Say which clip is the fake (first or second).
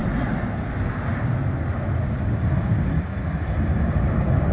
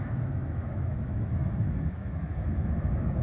second